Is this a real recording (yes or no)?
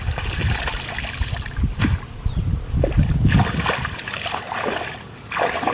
yes